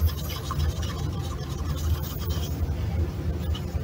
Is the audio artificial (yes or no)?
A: no